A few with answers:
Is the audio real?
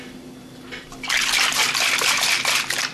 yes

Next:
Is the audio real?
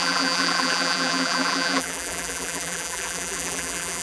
no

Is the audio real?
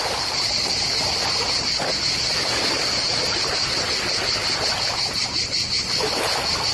yes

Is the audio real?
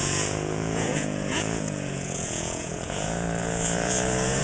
no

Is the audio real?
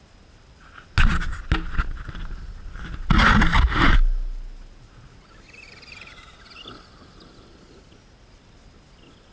yes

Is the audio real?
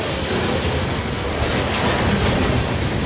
yes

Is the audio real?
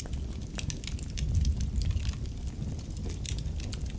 yes